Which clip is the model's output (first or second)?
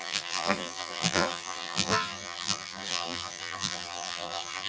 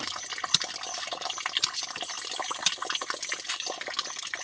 first